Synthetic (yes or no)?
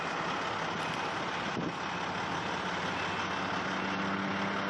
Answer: no